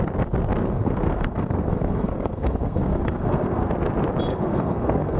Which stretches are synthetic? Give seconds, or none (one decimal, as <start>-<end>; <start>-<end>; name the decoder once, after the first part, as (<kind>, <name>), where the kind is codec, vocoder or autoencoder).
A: 0.6-3.7 (codec, SNAC); 4.3-5.2